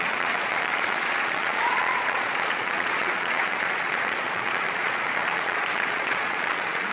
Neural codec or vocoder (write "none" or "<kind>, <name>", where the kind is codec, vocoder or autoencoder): vocoder, Vocos